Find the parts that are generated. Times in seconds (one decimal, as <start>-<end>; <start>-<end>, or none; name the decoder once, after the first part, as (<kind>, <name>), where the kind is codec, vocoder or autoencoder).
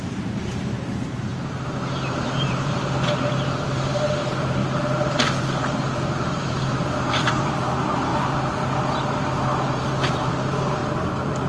0.0-4.6 (vocoder, BigVGAN v2); 5.4-8.1; 8.9-10.8